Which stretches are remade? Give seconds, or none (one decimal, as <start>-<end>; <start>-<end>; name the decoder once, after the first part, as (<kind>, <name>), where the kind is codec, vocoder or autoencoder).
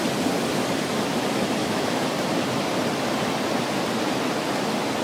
1.6-2.1 (autoencoder, DAC-VAE)